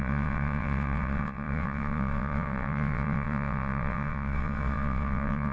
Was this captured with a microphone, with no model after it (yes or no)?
no